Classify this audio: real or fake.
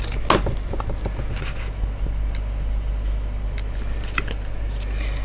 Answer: real